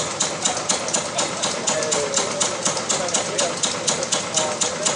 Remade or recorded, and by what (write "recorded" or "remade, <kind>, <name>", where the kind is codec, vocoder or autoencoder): recorded